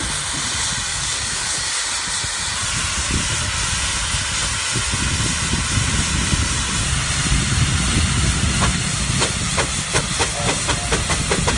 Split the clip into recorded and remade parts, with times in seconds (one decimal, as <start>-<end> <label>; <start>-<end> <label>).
0.0-0.9 recorded; 0.9-1.8 remade; 1.8-11.6 recorded